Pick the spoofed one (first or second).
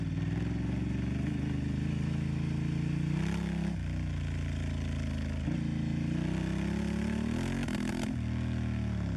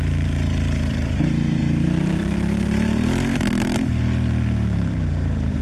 second